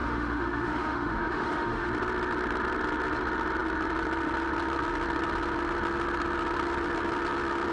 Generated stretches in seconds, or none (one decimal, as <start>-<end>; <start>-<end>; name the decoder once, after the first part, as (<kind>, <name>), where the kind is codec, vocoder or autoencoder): 0.0-1.9 (autoencoder, DAC-VAE)